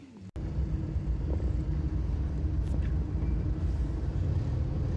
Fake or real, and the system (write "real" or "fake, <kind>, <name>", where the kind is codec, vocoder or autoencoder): real